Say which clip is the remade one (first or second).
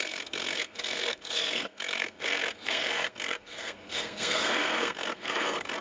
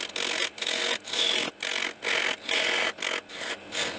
first